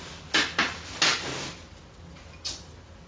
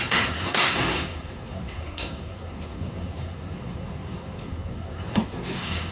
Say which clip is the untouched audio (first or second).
first